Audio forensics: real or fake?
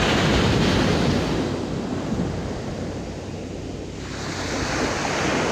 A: real